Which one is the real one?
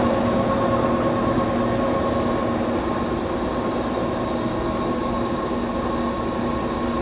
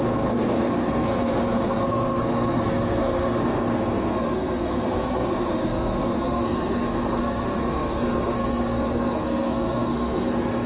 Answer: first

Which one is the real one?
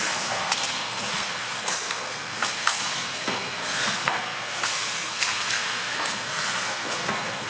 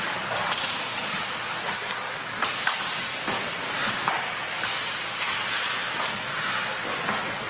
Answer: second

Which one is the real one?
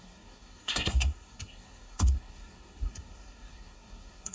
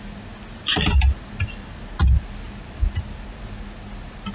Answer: second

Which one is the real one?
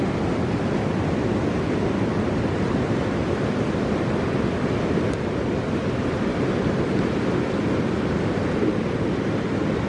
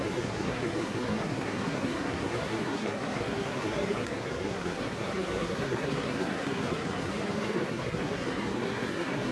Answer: first